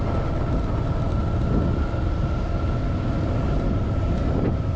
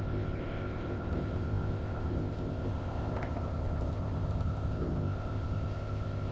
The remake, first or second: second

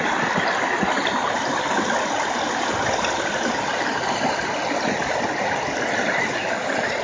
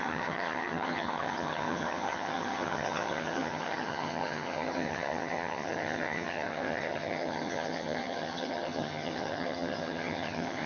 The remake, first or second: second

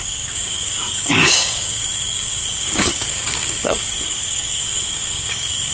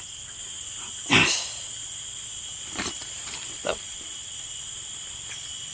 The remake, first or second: first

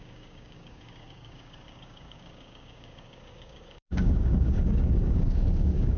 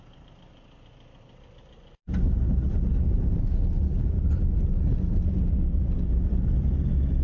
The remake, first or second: first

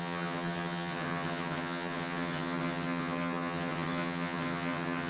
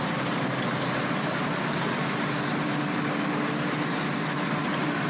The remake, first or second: first